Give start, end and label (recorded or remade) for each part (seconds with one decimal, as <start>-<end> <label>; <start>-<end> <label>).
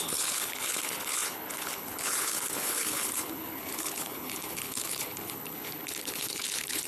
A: 0.0-6.9 remade